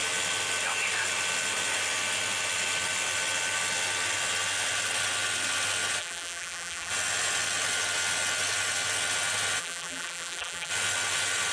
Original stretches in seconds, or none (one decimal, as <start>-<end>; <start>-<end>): 0.0-6.0; 6.9-9.6; 10.7-11.5